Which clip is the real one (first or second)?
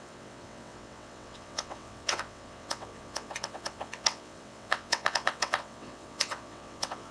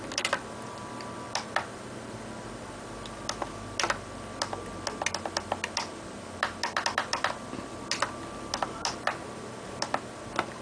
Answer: second